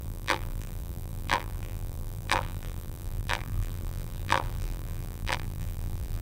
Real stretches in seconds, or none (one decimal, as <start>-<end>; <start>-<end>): none